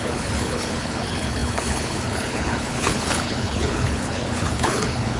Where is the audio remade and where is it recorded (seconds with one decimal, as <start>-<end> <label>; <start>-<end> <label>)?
0.0-5.2 remade